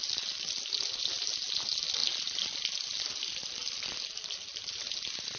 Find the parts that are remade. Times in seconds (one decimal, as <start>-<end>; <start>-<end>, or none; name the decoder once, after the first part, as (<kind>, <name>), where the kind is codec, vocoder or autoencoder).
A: none